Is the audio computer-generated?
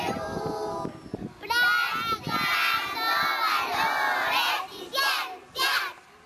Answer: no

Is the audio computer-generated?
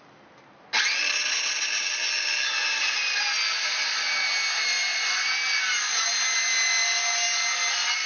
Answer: no